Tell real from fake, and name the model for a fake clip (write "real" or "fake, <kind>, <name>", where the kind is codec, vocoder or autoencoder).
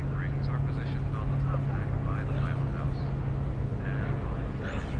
real